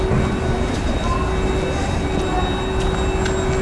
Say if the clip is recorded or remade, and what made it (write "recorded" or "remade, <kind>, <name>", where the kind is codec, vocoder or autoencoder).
recorded